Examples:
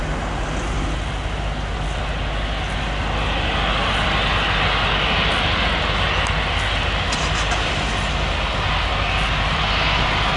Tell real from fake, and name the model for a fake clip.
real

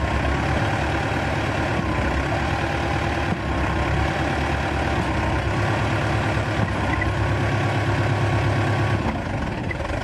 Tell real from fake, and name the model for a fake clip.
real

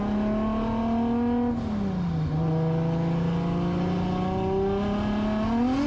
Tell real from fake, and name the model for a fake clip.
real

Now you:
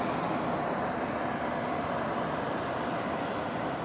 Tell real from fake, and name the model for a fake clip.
fake, vocoder, BigVGAN v2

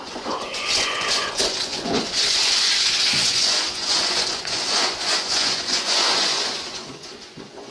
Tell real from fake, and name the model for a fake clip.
fake, vocoder, Vocos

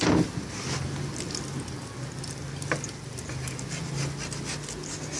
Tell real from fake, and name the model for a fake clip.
real